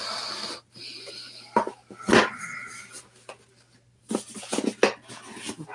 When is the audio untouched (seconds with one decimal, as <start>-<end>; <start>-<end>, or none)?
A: 0.0-5.7